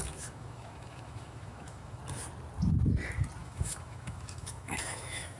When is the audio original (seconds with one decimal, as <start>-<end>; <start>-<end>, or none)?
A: 2.0-3.4